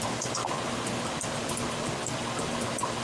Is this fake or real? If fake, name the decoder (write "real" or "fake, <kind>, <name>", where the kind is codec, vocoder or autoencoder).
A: real